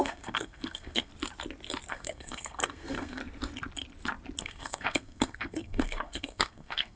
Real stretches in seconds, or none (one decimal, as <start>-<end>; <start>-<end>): 1.1-1.9; 3.2-4.4